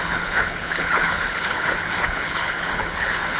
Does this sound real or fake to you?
fake